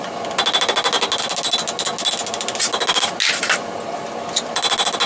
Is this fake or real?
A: real